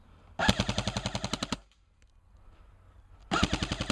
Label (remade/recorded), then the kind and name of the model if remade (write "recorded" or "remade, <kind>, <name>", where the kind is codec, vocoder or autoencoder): recorded